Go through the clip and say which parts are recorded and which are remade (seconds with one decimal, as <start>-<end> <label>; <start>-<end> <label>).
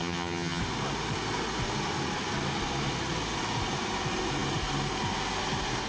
0.0-0.6 remade; 0.6-5.9 recorded